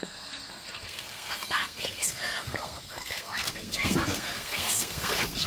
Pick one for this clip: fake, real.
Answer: fake